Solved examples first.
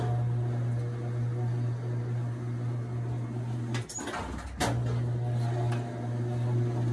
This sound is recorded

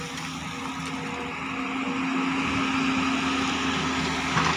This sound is recorded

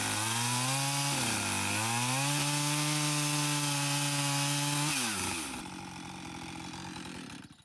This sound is recorded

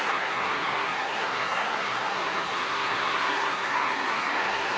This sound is remade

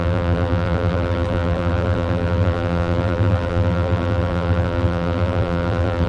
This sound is remade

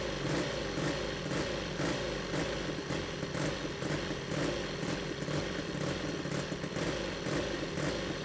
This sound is recorded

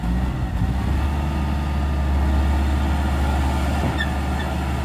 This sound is recorded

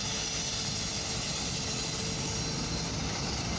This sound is recorded